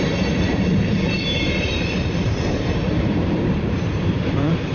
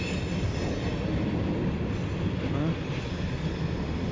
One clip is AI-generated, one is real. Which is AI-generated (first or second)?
first